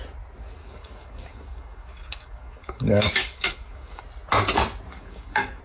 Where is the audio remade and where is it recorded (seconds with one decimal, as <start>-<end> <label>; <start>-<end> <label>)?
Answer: 0.0-0.6 recorded; 0.6-4.0 remade; 4.0-4.9 recorded; 4.9-5.6 remade